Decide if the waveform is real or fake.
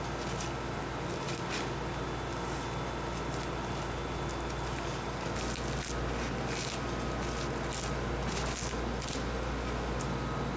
real